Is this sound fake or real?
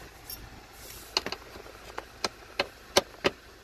real